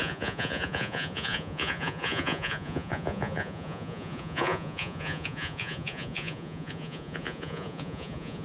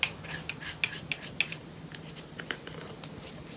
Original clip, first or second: second